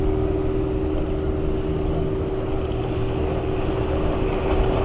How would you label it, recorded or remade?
recorded